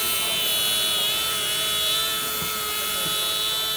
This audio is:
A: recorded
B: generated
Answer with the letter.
A